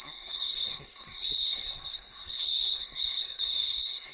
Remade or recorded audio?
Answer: remade